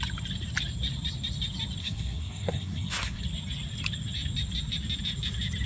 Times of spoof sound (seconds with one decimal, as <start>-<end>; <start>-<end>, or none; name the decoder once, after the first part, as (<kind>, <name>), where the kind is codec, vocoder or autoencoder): 1.8-3.2 (codec, SNAC)